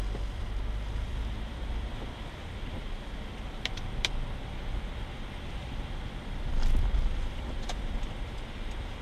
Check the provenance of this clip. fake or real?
fake